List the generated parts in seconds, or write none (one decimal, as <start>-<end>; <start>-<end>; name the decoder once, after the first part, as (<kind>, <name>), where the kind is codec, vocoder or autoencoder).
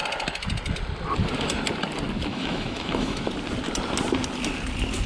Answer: 2.3-3.2 (autoencoder, DAC-VAE)